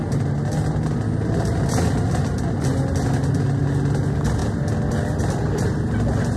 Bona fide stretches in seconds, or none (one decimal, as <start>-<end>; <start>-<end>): 0.0-6.4

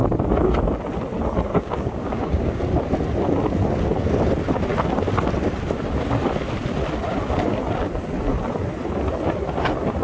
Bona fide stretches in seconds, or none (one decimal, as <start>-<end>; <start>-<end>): 0.0-1.5; 2.6-10.0

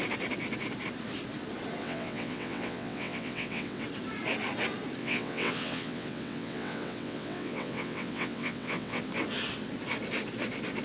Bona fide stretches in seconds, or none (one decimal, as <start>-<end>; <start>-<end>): 0.0-1.8; 3.8-5.0; 9.0-10.8

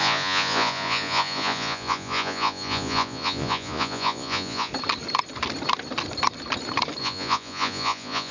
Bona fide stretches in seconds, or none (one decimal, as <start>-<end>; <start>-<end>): 4.7-7.0

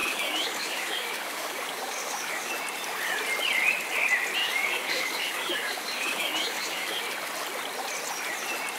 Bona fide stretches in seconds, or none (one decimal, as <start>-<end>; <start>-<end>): 2.5-4.4; 7.0-8.8

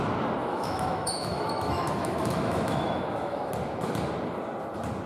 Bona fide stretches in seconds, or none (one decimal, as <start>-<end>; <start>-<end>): 0.0-0.4; 3.5-5.1

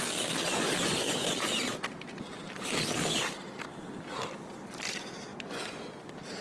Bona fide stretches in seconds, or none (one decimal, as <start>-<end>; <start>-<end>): 0.0-0.8; 1.5-5.3; 5.9-6.4

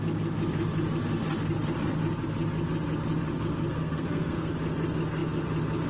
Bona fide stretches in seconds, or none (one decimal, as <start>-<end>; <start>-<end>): 0.0-3.7; 4.5-5.9